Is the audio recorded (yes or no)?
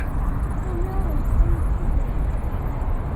yes